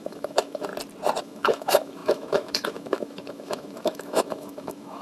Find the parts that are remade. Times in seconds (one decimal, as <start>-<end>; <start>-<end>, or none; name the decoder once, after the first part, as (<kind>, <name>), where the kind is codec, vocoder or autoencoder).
0.0-0.7 (autoencoder, DAC-VAE); 1.2-5.0